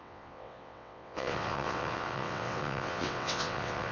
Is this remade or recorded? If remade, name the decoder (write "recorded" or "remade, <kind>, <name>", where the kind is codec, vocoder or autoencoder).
remade, vocoder, WaveNeXt